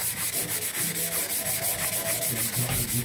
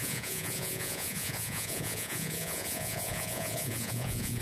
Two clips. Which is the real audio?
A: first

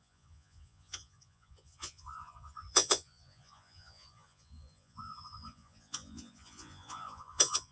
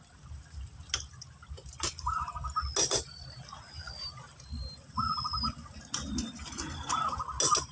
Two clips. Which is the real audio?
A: second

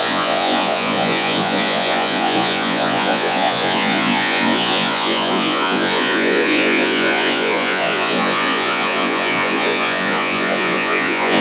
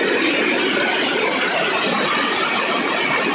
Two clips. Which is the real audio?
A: second